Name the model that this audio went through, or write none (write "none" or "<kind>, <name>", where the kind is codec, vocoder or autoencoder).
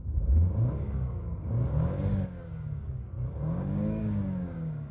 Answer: codec, DAC